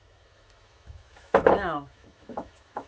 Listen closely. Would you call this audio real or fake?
fake